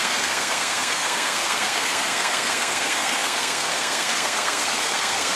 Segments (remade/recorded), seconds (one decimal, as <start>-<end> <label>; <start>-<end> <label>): 0.0-5.4 remade